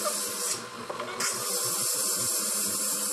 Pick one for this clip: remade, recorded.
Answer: recorded